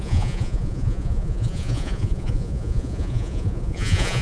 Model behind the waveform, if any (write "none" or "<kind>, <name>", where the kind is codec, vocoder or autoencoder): vocoder, Vocos